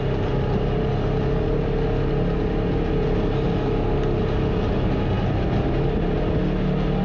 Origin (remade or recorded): recorded